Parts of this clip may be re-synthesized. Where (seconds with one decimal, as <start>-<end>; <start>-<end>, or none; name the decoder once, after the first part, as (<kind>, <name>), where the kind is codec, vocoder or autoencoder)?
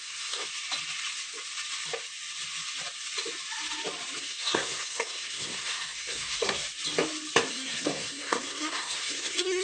0.0-0.5 (codec, SNAC); 4.2-6.6; 7.5-9.6